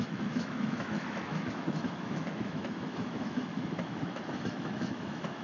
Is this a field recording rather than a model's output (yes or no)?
no